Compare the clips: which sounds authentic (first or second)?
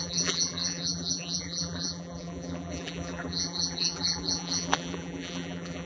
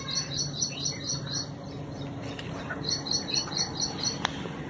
second